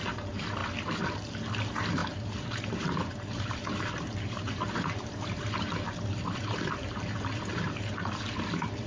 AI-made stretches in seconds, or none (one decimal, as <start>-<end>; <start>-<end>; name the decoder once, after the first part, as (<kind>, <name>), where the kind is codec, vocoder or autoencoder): 0.0-0.6 (vocoder, BigVGAN v2); 1.6-8.9